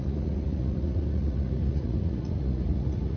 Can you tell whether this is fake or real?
fake